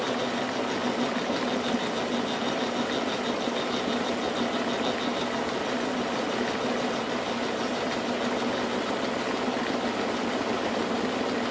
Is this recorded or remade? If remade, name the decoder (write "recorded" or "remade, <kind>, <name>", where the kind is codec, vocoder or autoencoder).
recorded